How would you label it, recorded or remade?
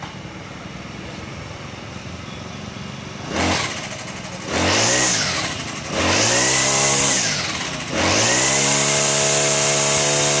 recorded